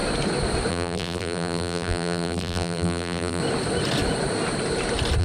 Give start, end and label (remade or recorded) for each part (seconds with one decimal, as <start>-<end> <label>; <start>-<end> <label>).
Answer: 0.0-0.7 recorded; 0.7-3.4 remade; 3.4-5.2 recorded